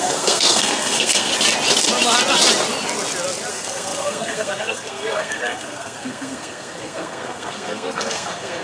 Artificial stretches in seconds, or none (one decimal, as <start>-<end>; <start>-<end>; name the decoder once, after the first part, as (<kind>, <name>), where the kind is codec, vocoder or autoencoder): 0.0-1.3 (codec, SNAC); 3.5-8.6